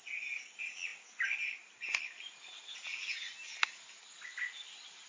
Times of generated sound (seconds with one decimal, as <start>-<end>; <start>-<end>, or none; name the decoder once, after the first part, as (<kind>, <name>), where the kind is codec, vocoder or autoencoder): none